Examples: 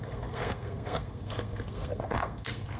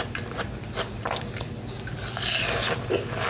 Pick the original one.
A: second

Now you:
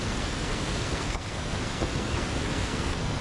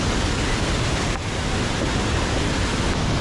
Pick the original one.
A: second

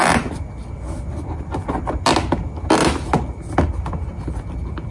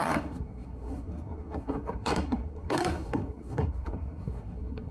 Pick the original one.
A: first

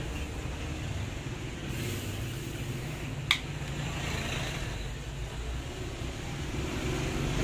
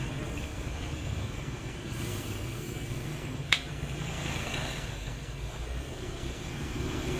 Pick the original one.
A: first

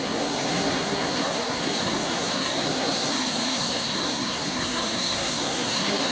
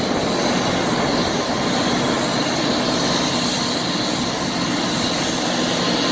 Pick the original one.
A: second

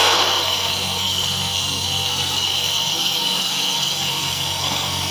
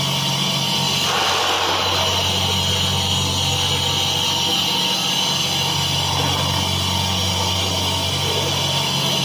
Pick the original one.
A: second